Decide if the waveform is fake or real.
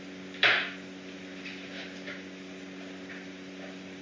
real